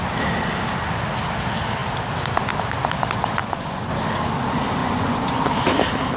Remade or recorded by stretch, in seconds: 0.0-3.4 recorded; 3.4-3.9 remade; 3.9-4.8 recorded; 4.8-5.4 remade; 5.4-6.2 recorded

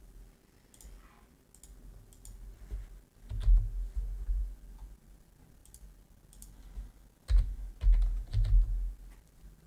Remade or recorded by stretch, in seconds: 0.0-9.7 recorded